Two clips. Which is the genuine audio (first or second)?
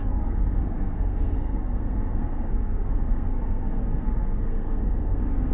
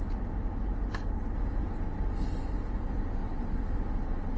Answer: second